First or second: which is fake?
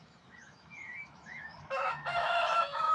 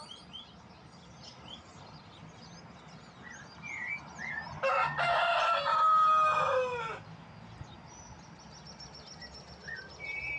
first